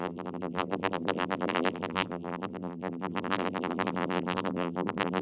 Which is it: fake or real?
fake